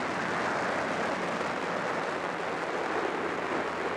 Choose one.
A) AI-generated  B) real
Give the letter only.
B